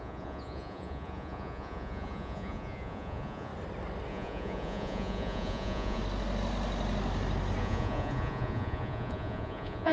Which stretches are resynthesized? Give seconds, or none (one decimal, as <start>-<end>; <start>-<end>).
0.0-3.5; 4.1-6.0; 7.6-9.9